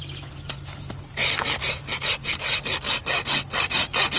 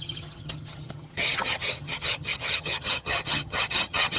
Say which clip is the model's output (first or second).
second